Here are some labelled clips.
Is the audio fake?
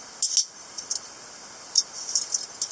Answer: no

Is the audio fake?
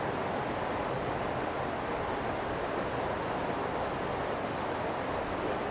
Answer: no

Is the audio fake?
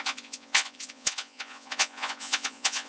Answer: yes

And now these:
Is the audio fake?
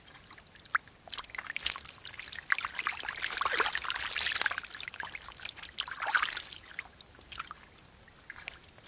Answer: no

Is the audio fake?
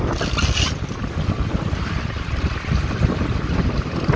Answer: no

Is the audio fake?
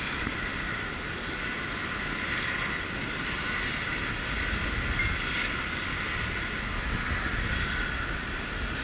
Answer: no